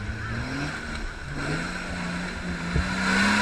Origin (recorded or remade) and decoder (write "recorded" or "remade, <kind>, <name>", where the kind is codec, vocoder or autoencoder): recorded